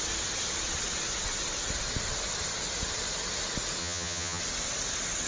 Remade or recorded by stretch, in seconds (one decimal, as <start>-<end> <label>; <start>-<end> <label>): 0.0-3.8 recorded; 3.8-4.4 remade; 4.4-5.3 recorded